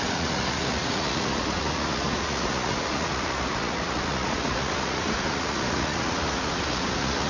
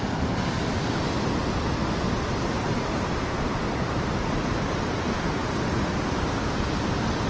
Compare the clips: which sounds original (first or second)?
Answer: second